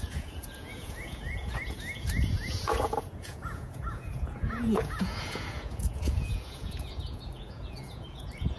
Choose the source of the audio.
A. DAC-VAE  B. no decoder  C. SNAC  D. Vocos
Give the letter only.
D